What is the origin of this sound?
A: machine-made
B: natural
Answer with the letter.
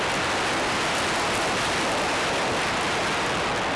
B